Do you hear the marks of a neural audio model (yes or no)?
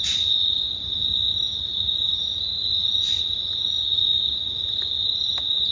no